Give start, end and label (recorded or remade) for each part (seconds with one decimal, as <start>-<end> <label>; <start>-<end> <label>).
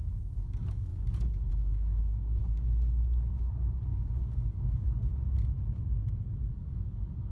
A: 0.0-5.1 remade; 5.1-6.5 recorded; 6.5-7.3 remade